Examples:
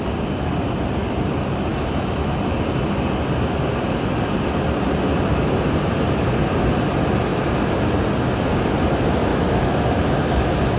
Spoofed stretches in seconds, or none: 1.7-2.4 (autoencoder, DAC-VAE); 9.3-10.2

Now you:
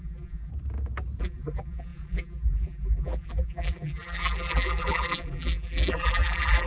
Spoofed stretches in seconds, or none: 0.0-0.5 (vocoder, BigVGAN v2); 1.2-6.7

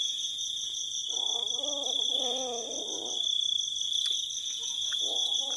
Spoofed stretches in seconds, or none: 0.0-1.0 (vocoder, Vocos); 4.4-5.6

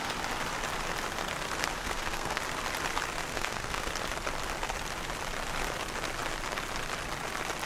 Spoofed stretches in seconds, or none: 1.8-2.4 (codec, SNAC); 3.3-3.9

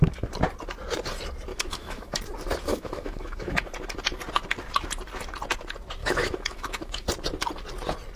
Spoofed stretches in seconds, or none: 1.5-2.2 (autoencoder, DAC-VAE); 2.7-3.6; 6.0-7.1

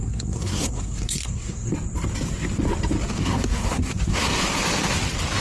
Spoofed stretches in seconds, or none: 0.0-1.7 (codec, SNAC); 3.1-4.3

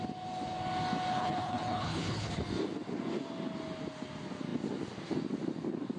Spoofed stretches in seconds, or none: 1.1-2.4 (codec, HILCodec)

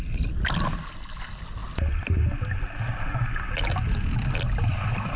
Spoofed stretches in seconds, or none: none